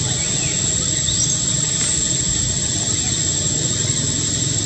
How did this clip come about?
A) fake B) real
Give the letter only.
B